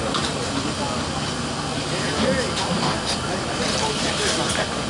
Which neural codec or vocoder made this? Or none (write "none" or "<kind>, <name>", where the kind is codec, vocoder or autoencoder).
none